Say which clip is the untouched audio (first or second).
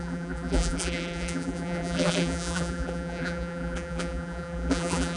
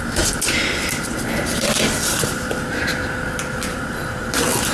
second